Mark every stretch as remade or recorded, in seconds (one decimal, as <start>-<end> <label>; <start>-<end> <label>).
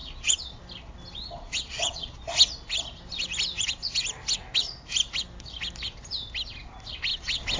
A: 0.0-0.6 remade; 0.6-1.3 recorded; 1.3-2.2 remade; 2.2-7.6 recorded